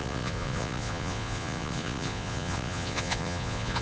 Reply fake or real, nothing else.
fake